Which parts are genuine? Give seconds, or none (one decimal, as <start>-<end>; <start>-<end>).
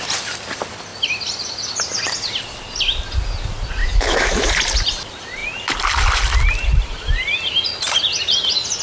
0.0-3.8; 4.5-8.8